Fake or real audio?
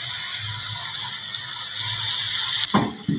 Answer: real